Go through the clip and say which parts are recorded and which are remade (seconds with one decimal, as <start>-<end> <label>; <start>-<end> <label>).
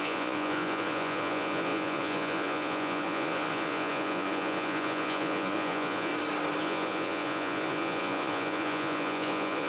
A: 0.0-6.1 remade; 6.1-6.6 recorded; 6.6-9.7 remade